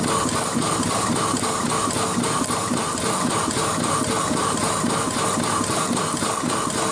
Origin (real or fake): real